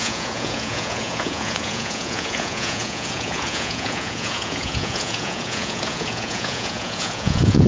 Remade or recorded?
remade